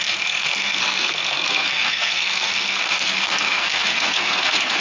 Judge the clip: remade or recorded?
remade